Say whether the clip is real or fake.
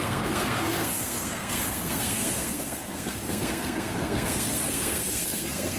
fake